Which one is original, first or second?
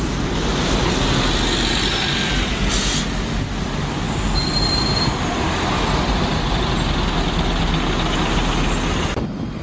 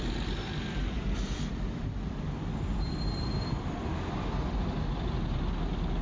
first